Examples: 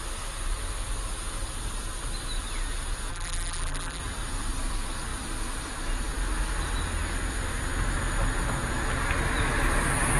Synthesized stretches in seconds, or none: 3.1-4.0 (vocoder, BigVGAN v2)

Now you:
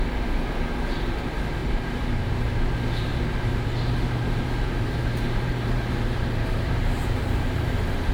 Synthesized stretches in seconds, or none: 1.6-2.3 (vocoder, BigVGAN v2); 3.1-8.1